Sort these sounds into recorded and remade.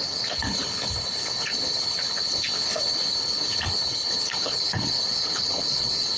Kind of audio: remade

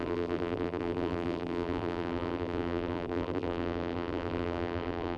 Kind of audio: remade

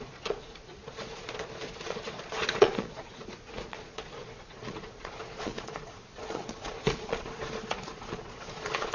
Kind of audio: remade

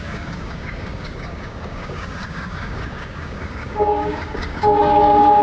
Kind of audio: remade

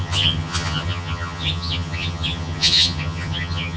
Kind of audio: remade